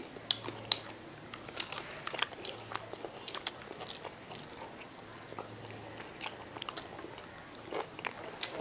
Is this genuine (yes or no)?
yes